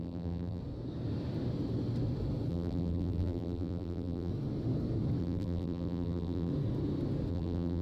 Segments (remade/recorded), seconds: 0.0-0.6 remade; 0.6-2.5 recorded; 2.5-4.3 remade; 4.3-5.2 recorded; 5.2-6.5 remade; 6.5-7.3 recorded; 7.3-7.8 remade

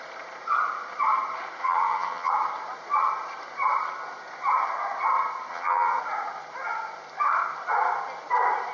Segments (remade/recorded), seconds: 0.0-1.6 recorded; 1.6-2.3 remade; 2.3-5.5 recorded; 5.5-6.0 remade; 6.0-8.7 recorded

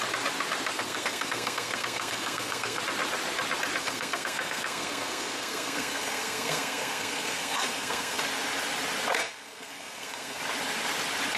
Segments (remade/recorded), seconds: 0.0-0.7 recorded; 0.7-2.8 remade; 2.8-3.8 recorded; 3.8-8.2 remade; 8.2-9.2 recorded; 9.2-10.4 remade; 10.4-11.4 recorded

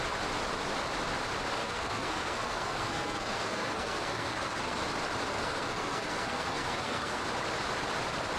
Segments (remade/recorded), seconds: 0.0-1.6 recorded; 1.6-4.8 remade; 4.8-5.3 recorded; 5.3-7.2 remade; 7.2-8.4 recorded

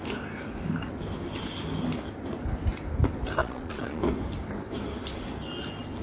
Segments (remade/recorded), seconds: 0.0-3.4 recorded; 3.4-4.0 remade; 4.0-6.0 recorded

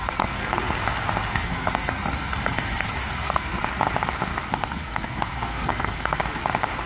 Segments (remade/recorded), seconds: 0.0-0.4 remade; 0.4-1.3 recorded; 1.3-3.6 remade; 3.6-4.5 recorded; 4.5-6.2 remade; 6.2-6.9 recorded

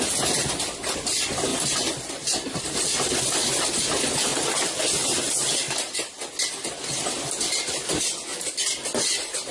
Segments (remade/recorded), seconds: 0.0-1.5 recorded; 1.5-3.6 remade; 3.6-9.5 recorded

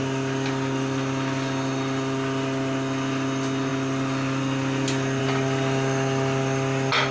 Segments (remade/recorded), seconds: 0.0-7.1 recorded